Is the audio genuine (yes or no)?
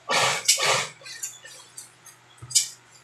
no